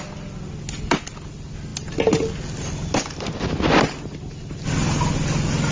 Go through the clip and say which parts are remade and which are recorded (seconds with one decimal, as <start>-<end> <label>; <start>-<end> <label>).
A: 0.0-5.7 recorded